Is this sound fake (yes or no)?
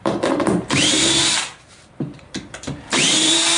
yes